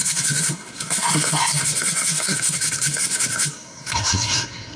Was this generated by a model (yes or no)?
yes